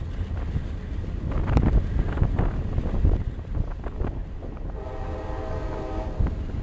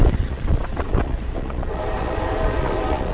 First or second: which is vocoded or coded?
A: second